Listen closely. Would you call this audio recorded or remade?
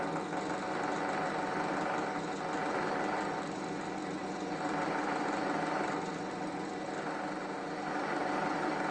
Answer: recorded